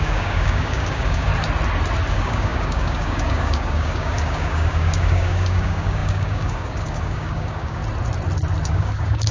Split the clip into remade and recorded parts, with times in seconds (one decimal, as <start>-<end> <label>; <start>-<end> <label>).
0.0-1.3 remade; 1.3-2.1 recorded; 2.1-7.8 remade; 7.8-8.7 recorded; 8.7-9.3 remade